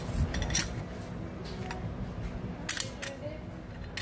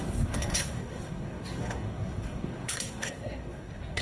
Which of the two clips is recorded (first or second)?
first